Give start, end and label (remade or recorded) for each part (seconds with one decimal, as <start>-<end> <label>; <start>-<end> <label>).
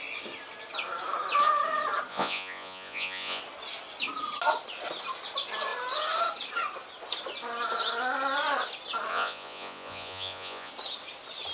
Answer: 0.0-2.1 recorded; 2.1-3.4 remade; 3.4-9.1 recorded; 9.1-10.7 remade; 10.7-11.5 recorded